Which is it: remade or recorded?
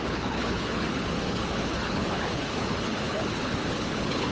remade